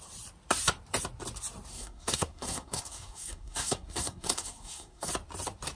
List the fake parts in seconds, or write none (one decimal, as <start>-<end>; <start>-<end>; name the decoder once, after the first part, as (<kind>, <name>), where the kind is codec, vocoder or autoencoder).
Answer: 1.7-5.1 (codec, SNAC)

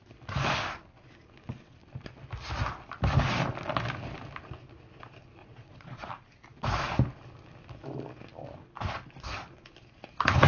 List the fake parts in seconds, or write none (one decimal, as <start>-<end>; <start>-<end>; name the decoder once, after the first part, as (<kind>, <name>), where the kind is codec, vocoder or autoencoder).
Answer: 5.4-6.0 (vocoder, Vocos)

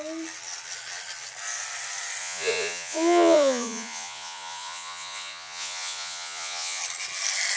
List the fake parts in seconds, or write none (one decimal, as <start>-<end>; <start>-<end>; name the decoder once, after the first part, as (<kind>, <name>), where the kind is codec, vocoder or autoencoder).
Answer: 2.2-6.8 (vocoder, Vocos)

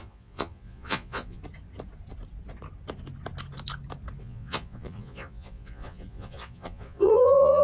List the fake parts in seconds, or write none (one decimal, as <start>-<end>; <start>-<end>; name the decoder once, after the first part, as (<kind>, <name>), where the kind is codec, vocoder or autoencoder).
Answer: 0.0-1.4 (vocoder, Vocos); 4.2-7.6